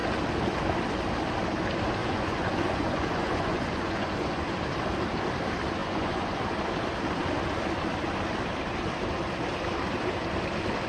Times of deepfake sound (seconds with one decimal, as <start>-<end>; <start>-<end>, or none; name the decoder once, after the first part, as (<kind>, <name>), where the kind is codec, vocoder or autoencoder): 2.0-4.5 (vocoder, Vocos); 5.8-6.4